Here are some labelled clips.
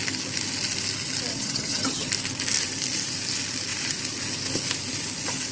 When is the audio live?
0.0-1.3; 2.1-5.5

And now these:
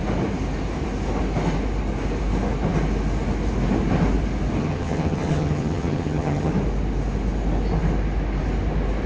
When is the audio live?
0.0-4.6; 6.5-9.1

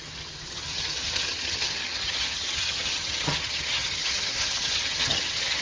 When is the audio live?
none

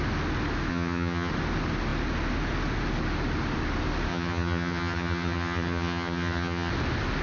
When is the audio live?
0.0-0.7; 1.3-4.1; 6.7-7.2